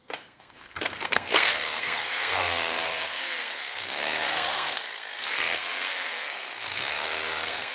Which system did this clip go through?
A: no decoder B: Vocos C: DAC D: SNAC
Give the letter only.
D